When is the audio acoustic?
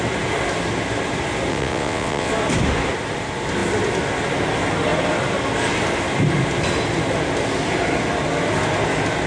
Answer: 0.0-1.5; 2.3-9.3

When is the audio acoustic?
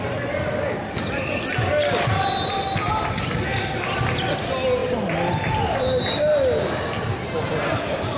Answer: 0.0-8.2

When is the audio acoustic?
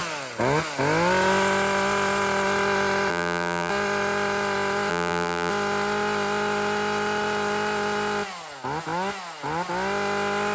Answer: 0.0-3.1; 3.7-4.9; 5.5-10.5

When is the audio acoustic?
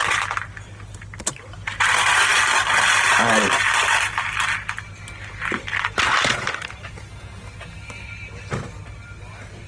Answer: 0.0-9.7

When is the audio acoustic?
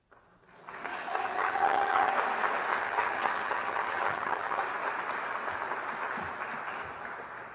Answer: 0.0-0.9; 2.1-2.8; 4.6-7.5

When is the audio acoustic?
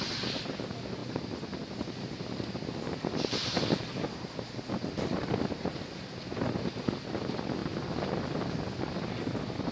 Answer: 0.0-9.7